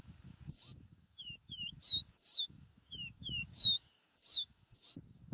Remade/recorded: remade